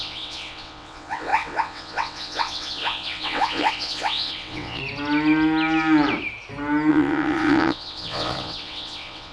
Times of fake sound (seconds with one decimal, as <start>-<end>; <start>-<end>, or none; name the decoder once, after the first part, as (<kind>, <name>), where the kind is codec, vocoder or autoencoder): 0.0-4.8 (vocoder, WaveNeXt); 6.9-9.3